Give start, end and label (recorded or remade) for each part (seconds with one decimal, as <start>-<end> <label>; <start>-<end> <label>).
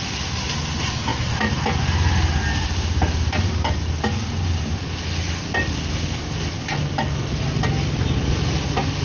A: 0.0-9.0 recorded